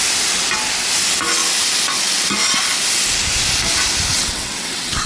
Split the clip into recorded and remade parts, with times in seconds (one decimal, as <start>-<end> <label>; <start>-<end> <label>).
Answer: 0.0-4.1 recorded; 4.1-5.1 remade